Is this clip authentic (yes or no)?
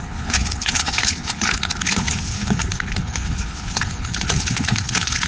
no